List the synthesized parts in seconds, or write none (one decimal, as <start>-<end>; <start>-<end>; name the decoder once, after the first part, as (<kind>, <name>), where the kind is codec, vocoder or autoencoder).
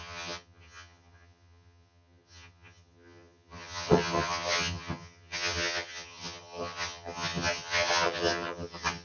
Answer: 0.0-9.0 (vocoder, HiFi-GAN)